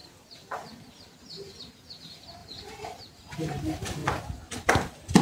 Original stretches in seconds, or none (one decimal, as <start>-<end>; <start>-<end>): 4.0-5.2